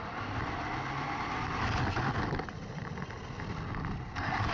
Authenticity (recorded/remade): recorded